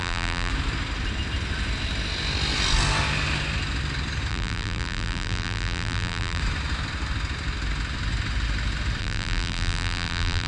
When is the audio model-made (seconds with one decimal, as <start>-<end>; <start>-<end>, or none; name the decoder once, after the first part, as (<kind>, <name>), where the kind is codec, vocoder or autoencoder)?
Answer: 0.0-0.5 (vocoder, BigVGAN v2); 4.3-6.4; 9.0-10.5

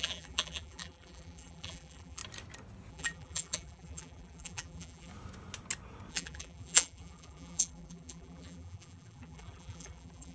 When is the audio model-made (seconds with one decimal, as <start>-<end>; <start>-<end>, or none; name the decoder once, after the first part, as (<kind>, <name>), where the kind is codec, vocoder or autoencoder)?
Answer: 0.0-2.2 (vocoder, BigVGAN v2); 2.9-5.1; 6.1-10.3

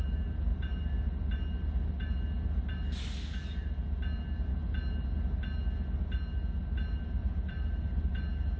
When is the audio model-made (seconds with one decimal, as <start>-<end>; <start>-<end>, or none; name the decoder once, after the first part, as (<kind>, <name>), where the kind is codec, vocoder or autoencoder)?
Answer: 7.2-7.8 (vocoder, BigVGAN v2)

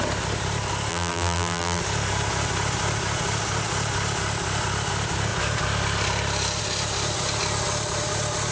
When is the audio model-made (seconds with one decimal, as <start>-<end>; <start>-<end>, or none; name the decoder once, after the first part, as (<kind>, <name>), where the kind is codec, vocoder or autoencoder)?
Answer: 0.9-1.8 (vocoder, BigVGAN v2)

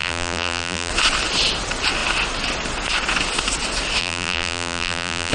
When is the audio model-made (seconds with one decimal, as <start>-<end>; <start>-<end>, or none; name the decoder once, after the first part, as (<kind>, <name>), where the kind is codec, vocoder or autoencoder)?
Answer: 0.0-0.9 (vocoder, BigVGAN v2); 4.0-5.3

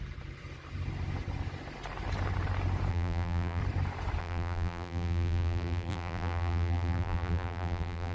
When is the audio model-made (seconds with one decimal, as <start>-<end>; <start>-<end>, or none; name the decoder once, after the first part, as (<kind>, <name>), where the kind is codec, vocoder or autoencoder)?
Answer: 2.9-3.6 (vocoder, BigVGAN v2); 4.2-8.1

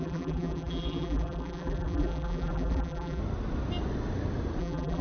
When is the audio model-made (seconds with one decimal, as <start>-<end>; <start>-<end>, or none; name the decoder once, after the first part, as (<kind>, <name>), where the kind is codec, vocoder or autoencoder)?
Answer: 0.0-3.2 (vocoder, BigVGAN v2); 4.6-5.0